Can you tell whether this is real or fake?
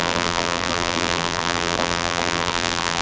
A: fake